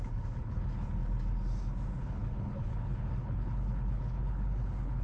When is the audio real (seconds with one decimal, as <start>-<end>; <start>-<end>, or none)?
1.0-1.9